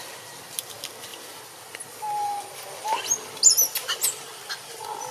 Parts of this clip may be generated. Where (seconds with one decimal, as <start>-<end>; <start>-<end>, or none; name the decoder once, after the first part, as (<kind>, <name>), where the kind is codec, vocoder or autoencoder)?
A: none